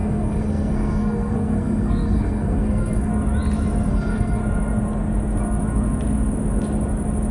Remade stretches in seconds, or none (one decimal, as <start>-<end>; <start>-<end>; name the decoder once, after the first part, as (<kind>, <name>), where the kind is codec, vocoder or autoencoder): 0.0-3.1 (codec, SNAC); 3.9-4.4